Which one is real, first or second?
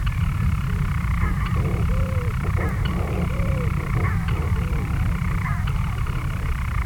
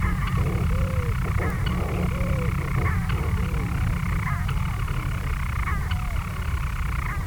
second